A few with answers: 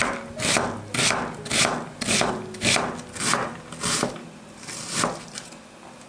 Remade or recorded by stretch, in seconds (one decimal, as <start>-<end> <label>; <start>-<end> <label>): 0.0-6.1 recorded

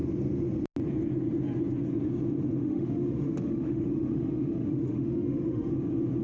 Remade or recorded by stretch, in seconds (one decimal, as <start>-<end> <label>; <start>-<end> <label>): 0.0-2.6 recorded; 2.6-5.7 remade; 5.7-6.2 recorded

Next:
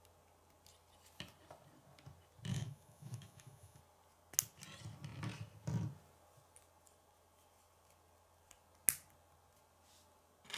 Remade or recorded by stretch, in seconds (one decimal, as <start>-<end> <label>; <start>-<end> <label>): 0.0-2.5 recorded; 2.5-3.8 remade; 3.8-10.6 recorded

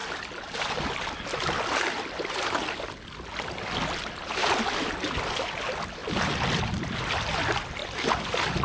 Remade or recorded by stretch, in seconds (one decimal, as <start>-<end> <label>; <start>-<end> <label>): 0.0-8.6 recorded

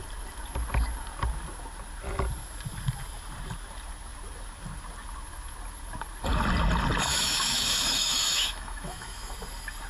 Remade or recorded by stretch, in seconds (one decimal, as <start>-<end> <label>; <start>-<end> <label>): 0.0-7.1 recorded; 7.1-9.3 remade; 9.3-9.9 recorded